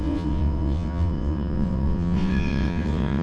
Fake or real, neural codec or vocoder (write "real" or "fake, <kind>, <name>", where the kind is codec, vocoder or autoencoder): fake, vocoder, WaveNeXt